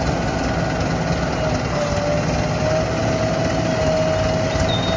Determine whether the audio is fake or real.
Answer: real